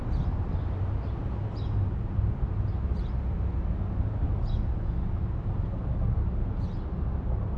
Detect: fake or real real